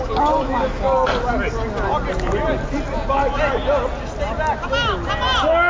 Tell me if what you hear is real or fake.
real